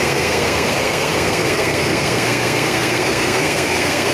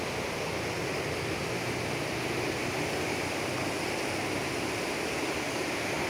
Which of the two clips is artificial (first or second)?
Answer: first